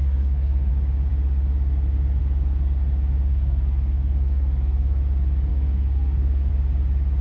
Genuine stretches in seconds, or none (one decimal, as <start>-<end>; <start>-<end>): 0.7-3.3; 5.0-5.5; 6.5-7.2